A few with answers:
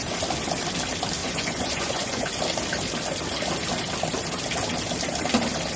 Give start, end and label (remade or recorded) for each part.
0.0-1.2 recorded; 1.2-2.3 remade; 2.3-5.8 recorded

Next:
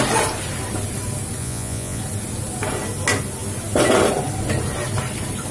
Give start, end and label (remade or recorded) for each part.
0.0-1.4 recorded; 1.4-2.0 remade; 2.0-5.5 recorded

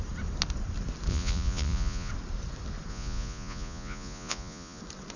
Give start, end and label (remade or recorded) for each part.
0.0-1.1 recorded; 1.1-2.1 remade; 2.1-2.9 recorded; 2.9-4.8 remade; 4.8-5.2 recorded

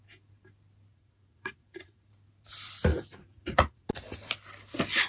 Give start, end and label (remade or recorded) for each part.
0.0-0.9 recorded; 0.9-2.1 remade; 2.1-2.9 recorded; 2.9-3.9 remade; 3.9-5.1 recorded

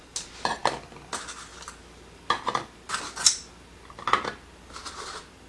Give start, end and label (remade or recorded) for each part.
0.0-5.5 recorded

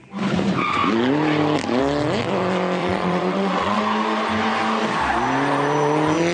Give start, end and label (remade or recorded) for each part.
0.0-2.8 recorded; 2.8-3.8 remade; 3.8-6.3 recorded

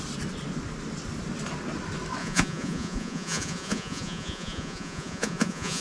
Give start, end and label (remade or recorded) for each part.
0.0-2.2 recorded; 2.2-5.8 remade